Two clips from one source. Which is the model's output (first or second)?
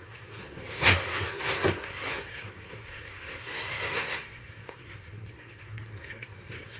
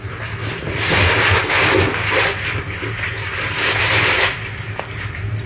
first